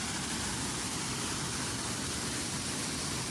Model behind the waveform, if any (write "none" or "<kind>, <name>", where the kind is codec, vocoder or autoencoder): none